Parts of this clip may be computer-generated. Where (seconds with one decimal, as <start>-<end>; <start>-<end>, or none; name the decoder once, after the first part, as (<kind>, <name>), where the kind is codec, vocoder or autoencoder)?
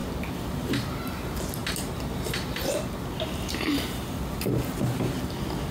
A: none